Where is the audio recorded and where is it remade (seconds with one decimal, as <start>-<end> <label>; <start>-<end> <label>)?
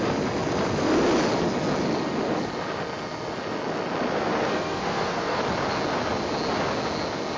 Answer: 0.0-4.5 recorded; 4.5-5.4 remade; 5.4-7.4 recorded